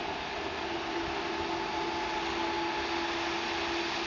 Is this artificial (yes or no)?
no